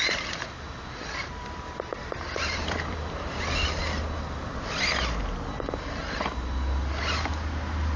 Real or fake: real